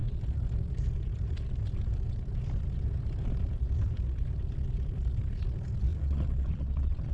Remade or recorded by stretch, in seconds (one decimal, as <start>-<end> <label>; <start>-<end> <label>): 0.0-5.9 recorded; 5.9-7.1 remade